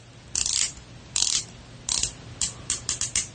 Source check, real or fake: real